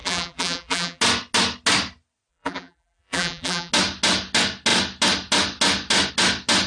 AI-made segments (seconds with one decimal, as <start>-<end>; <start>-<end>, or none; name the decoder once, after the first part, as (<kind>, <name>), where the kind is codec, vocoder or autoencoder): 0.0-1.0 (vocoder, BigVGAN v2); 2.3-3.7